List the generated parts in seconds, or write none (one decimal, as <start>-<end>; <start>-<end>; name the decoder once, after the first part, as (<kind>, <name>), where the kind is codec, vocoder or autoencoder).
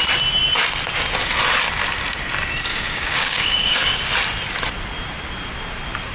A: 2.7-4.0 (codec, DAC)